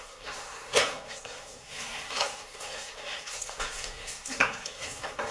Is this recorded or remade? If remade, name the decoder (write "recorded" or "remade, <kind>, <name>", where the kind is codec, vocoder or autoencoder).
remade, codec, SNAC